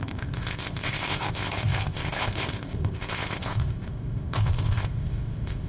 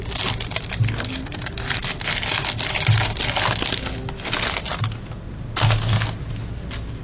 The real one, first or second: second